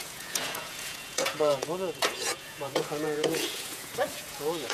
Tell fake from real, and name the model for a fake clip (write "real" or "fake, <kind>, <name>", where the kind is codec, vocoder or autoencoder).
fake, vocoder, Vocos